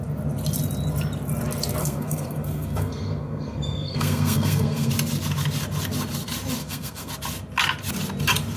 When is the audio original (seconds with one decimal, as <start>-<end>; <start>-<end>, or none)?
0.0-1.8; 4.9-6.6; 7.1-8.6